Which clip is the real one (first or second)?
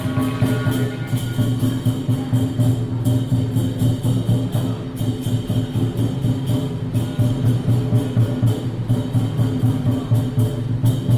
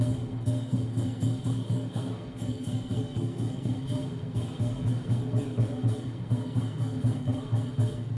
first